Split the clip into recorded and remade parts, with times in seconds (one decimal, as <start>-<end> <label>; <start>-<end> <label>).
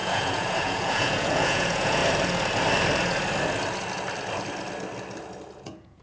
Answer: 0.0-2.0 remade; 2.0-5.6 recorded; 5.6-6.0 remade